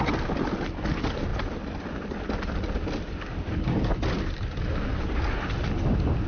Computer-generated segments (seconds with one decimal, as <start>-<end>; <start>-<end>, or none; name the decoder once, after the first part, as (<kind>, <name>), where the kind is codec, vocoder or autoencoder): none